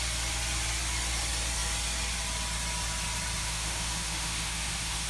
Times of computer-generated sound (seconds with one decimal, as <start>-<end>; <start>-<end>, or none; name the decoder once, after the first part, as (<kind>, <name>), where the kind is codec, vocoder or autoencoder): 3.4-5.1 (autoencoder, DAC-VAE)

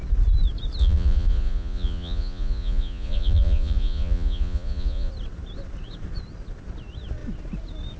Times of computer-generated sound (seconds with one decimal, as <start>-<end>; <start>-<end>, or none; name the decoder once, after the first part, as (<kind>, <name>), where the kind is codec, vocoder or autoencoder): 0.8-5.1 (vocoder, Vocos)